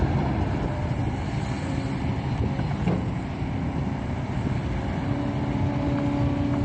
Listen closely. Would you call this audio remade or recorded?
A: recorded